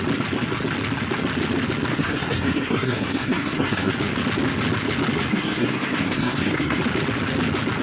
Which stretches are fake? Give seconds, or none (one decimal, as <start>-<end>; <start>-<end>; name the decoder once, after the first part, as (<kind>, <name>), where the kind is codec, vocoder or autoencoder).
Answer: 1.9-3.9 (codec, SNAC); 5.3-6.8